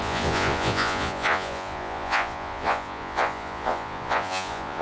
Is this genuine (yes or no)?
no